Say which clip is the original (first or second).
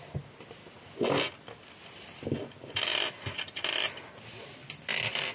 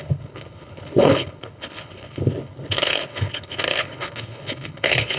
first